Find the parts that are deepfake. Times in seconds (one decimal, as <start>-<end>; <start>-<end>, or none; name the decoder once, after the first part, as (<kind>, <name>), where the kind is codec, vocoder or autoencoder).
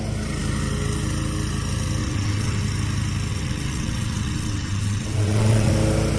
2.0-2.6 (vocoder, WaveNeXt); 3.3-5.7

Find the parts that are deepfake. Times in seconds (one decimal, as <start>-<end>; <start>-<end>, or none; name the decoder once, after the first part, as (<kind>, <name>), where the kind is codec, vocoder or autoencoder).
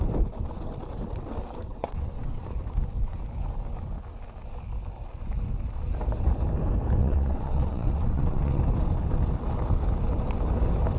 1.7-2.4 (vocoder, WaveNeXt); 7.0-8.6